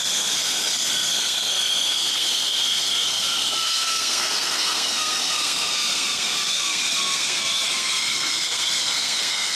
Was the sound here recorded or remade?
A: remade